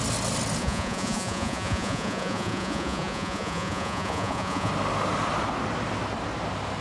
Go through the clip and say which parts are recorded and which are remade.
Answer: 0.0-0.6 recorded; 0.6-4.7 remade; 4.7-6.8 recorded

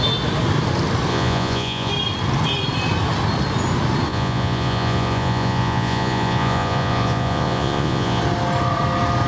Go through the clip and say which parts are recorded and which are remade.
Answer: 0.0-1.1 recorded; 1.1-1.9 remade; 1.9-4.1 recorded; 4.1-8.2 remade; 8.2-9.3 recorded

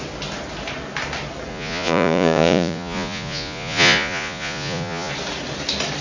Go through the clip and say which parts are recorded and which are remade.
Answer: 0.0-1.5 recorded; 1.5-5.1 remade; 5.1-6.0 recorded

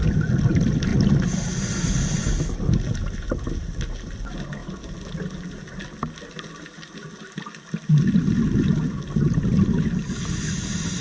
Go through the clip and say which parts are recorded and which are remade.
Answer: 0.0-11.0 recorded

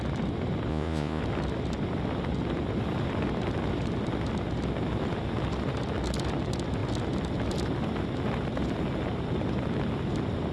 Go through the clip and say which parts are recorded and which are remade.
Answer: 0.0-0.7 recorded; 0.7-1.2 remade; 1.2-10.5 recorded

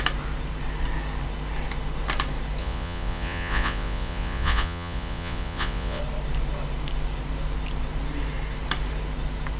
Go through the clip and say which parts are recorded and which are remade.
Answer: 0.0-2.6 recorded; 2.6-6.0 remade; 6.0-9.6 recorded